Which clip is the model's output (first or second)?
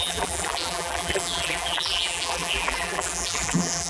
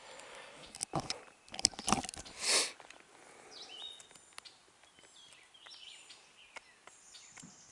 first